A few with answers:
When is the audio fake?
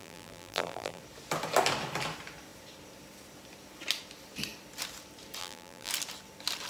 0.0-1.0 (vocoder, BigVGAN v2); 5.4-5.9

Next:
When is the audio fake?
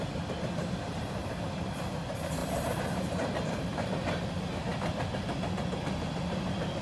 2.4-3.1 (vocoder, BigVGAN v2)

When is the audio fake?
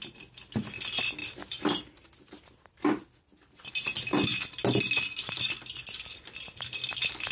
4.3-6.2 (vocoder, BigVGAN v2)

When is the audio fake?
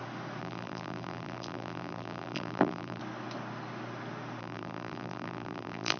0.4-3.0 (vocoder, BigVGAN v2); 4.4-6.0